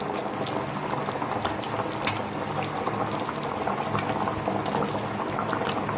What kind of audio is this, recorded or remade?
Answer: recorded